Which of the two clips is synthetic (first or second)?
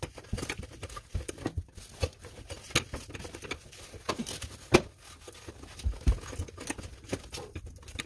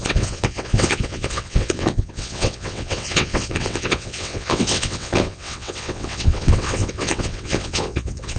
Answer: second